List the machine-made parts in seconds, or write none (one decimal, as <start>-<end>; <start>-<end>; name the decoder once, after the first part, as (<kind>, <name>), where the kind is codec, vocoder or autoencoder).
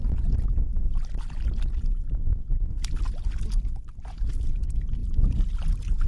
none